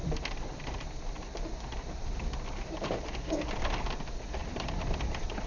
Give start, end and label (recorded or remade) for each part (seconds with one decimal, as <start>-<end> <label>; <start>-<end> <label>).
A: 0.0-3.3 remade; 3.3-4.4 recorded; 4.4-5.5 remade